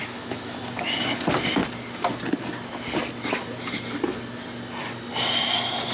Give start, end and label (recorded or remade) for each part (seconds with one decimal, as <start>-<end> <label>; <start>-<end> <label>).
0.0-0.6 remade; 0.6-5.9 recorded